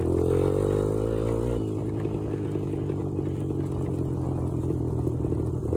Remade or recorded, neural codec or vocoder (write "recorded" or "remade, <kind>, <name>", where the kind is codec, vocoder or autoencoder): recorded